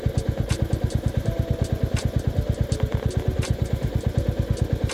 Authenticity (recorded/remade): recorded